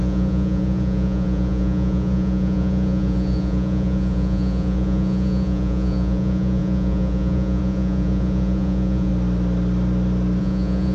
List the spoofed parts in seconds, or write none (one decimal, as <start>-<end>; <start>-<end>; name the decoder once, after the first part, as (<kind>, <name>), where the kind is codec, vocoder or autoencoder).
0.0-9.1 (vocoder, Vocos); 10.4-10.9